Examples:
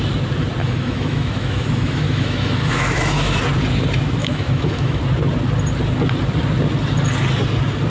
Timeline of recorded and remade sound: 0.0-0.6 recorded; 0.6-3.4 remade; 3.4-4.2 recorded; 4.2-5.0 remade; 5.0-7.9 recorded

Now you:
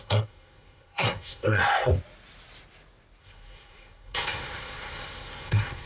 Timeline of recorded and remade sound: 0.0-1.9 remade; 1.9-3.2 recorded; 3.2-5.9 remade

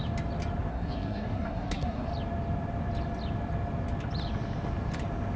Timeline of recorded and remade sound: 0.0-0.7 recorded; 0.7-2.1 remade; 2.1-5.4 recorded